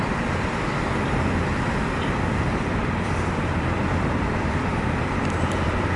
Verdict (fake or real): fake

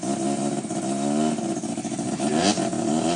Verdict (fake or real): real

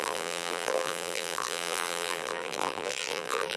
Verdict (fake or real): fake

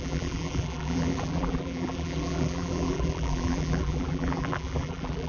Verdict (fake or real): fake